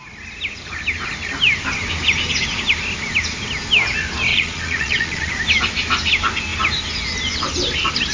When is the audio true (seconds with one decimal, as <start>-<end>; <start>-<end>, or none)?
0.0-4.3; 5.3-8.1